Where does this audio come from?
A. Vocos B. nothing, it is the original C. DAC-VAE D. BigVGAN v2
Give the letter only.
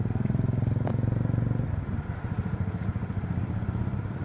B